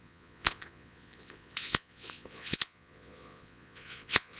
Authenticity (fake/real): fake